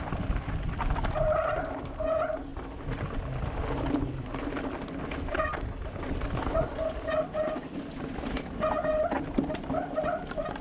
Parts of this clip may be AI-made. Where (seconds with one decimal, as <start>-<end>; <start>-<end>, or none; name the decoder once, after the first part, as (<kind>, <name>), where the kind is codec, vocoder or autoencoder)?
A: none